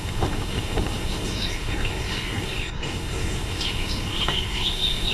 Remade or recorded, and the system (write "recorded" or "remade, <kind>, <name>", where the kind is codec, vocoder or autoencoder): remade, codec, SNAC